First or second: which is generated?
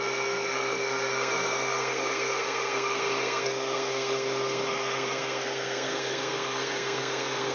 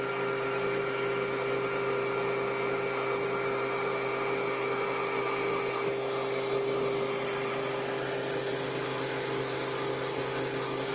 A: first